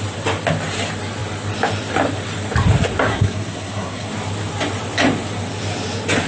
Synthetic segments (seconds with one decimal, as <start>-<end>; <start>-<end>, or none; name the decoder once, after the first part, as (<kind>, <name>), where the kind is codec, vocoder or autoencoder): 3.1-4.1 (codec, SNAC)